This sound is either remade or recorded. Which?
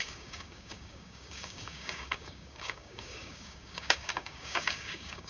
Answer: remade